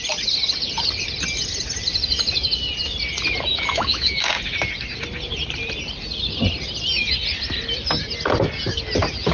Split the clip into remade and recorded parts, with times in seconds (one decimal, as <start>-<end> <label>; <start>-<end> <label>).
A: 0.0-3.5 recorded; 3.5-4.3 remade; 4.3-9.3 recorded